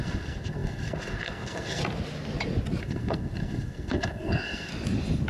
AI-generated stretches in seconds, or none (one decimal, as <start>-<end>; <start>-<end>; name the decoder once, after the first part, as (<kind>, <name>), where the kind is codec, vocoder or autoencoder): 0.0-1.8 (codec, SNAC); 2.8-4.7